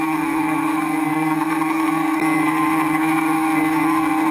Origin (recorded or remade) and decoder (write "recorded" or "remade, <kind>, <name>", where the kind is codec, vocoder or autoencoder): remade, codec, SNAC